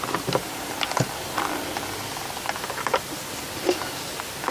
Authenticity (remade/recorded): recorded